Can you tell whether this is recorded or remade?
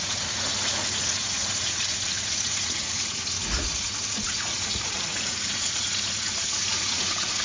remade